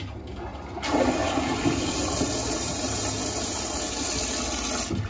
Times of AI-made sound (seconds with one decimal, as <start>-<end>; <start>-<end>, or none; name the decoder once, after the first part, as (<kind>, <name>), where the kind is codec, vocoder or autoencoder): 0.9-4.0 (vocoder, BigVGAN v2)